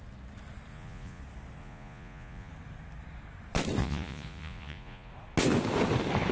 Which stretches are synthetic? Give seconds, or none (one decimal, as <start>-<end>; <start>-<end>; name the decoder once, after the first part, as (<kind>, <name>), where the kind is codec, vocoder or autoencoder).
0.7-1.2 (vocoder, Vocos); 1.6-2.5; 3.8-5.1